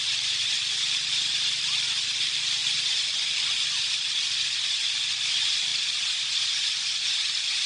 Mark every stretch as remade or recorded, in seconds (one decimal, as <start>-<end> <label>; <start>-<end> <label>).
0.0-7.7 recorded